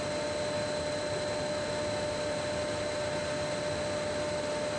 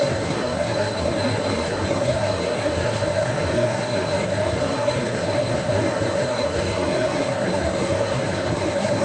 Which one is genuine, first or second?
first